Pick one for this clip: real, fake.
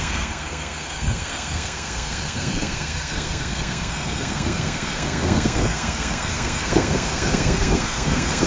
fake